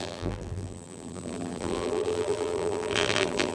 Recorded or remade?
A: remade